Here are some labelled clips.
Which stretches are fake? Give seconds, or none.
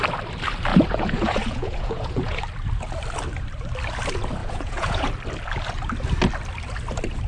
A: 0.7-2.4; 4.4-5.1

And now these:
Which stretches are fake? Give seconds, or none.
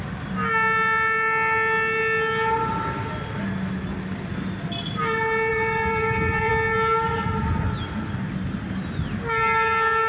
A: 5.5-6.5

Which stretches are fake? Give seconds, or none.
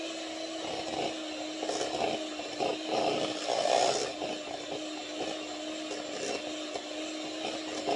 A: none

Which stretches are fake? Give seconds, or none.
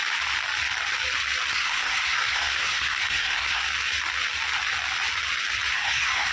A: 1.5-3.6; 5.7-6.3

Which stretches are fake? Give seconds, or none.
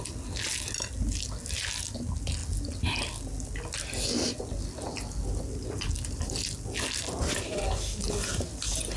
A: none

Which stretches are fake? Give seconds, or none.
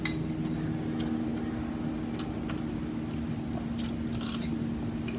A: none